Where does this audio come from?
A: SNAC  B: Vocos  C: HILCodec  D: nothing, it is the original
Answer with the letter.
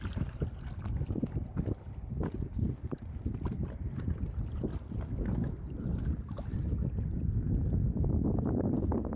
D